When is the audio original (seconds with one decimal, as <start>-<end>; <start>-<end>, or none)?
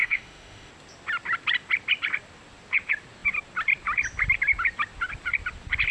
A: 0.7-5.9